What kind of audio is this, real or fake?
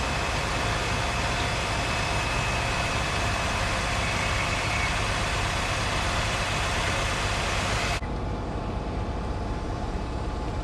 fake